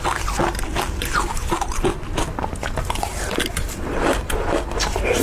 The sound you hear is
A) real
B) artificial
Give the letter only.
A